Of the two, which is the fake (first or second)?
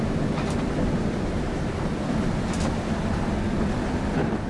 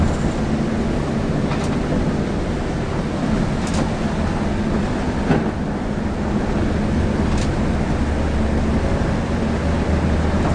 first